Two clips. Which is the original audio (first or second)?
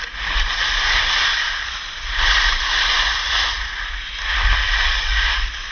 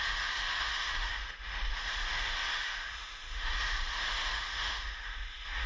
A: first